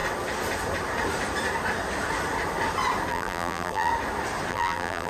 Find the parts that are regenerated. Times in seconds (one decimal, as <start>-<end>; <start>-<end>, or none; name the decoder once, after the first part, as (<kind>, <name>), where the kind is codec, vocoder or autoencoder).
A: 3.1-3.9 (vocoder, BigVGAN v2); 4.5-5.1